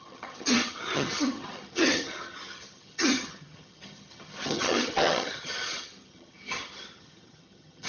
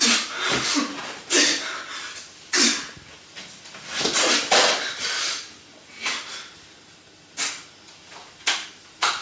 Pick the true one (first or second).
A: second